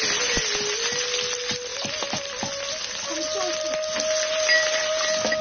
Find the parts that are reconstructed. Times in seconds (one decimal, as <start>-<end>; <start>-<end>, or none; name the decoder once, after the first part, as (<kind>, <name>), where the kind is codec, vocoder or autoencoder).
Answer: none